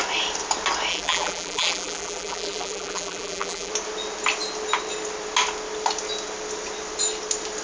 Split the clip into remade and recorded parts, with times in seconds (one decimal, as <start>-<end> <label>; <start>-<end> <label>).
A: 0.0-0.9 recorded; 0.9-3.7 remade; 3.7-7.6 recorded

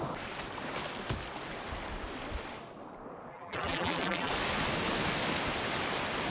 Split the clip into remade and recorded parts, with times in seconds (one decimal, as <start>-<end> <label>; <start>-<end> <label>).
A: 0.0-3.3 recorded; 3.3-4.3 remade; 4.3-6.3 recorded